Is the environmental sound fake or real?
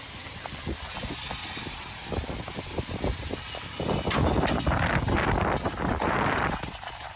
real